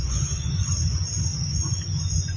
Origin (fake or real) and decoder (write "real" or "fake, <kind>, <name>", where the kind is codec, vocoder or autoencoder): fake, vocoder, Vocos